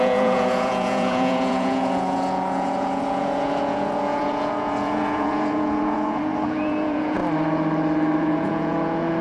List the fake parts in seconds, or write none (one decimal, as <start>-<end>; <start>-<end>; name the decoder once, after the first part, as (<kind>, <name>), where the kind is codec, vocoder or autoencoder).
0.0-7.2 (vocoder, Vocos); 8.2-9.2